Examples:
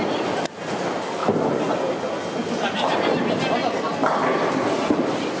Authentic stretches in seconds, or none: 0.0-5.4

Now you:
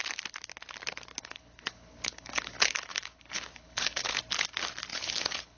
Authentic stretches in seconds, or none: 0.0-1.2; 4.2-4.9

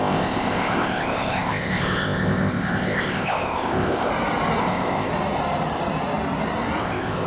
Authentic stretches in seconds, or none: 4.1-4.6; 5.1-6.8

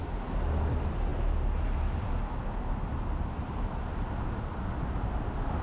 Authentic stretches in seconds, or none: 0.0-5.6

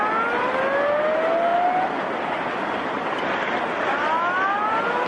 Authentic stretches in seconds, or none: 0.0-5.1

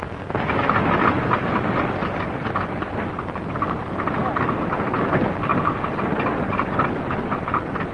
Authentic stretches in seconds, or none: 0.0-7.9

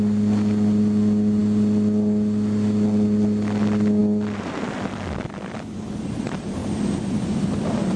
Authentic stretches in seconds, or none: 0.0-8.0

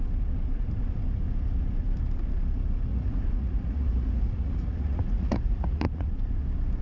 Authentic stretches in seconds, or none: 0.0-2.9; 6.1-6.8